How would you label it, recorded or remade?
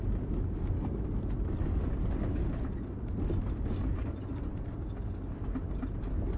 recorded